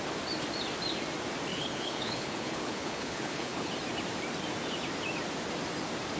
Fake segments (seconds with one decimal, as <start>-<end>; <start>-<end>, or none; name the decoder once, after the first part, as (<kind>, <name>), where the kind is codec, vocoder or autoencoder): 1.5-3.7 (codec, HILCodec)